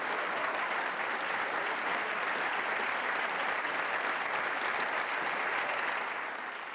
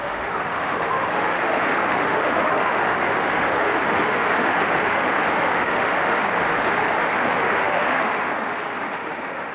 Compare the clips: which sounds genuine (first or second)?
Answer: first